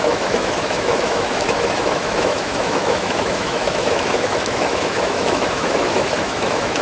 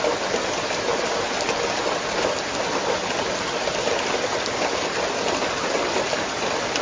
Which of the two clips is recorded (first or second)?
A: second